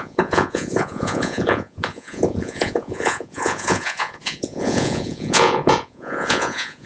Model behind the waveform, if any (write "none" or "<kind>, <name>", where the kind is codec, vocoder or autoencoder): vocoder, Vocos